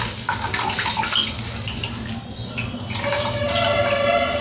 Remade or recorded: recorded